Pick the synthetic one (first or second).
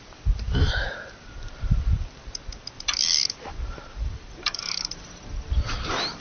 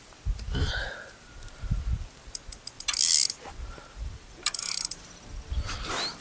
first